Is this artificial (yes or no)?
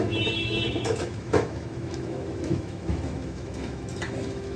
yes